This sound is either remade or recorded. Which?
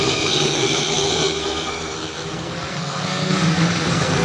remade